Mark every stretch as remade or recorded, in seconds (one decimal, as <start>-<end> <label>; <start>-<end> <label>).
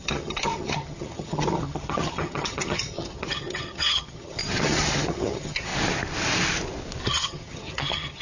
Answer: 0.0-5.7 remade; 5.7-7.1 recorded; 7.1-8.2 remade